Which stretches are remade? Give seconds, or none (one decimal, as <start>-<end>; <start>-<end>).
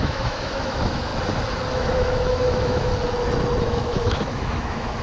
0.0-1.1; 1.7-2.9; 3.6-5.0